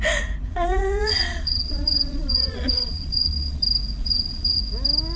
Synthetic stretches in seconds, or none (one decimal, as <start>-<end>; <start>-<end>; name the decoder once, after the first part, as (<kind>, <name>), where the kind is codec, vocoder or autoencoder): 0.5-3.6 (vocoder, Vocos); 4.0-4.6